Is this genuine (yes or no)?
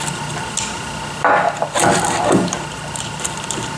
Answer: yes